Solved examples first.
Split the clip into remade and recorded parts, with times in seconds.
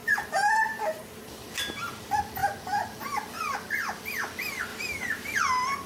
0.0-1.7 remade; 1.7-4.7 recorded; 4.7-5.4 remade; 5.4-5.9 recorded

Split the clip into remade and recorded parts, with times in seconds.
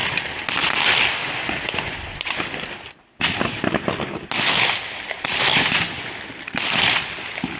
0.0-1.2 recorded; 1.2-2.4 remade; 2.4-5.5 recorded; 5.5-6.1 remade; 6.1-7.6 recorded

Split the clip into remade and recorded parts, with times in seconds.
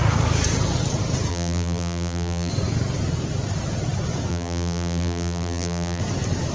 0.0-1.3 recorded; 1.3-2.5 remade; 2.5-4.3 recorded; 4.3-6.0 remade; 6.0-6.5 recorded